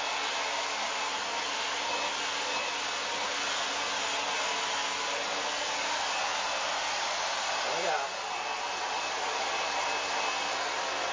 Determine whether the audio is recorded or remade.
recorded